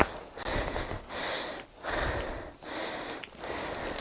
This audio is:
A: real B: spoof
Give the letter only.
A